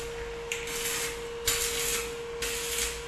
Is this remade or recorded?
recorded